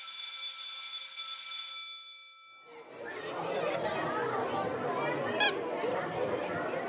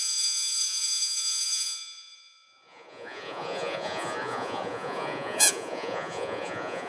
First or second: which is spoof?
second